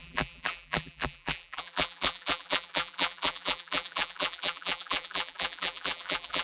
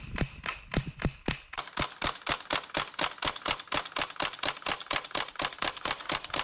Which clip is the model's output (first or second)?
first